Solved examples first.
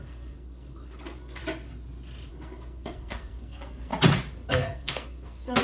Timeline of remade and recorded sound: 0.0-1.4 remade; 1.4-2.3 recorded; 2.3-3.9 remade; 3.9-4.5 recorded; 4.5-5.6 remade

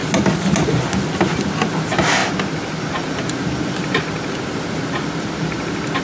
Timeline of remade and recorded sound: 0.0-1.2 recorded; 1.2-2.2 remade; 2.2-6.0 recorded